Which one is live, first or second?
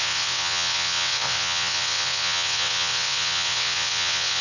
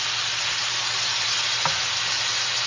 second